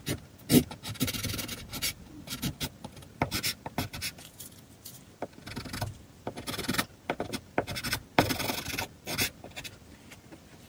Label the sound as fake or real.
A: real